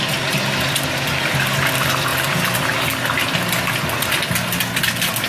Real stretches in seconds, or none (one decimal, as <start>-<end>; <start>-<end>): 0.0-5.3